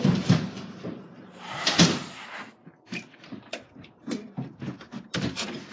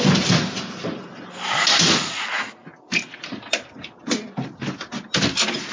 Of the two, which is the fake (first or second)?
first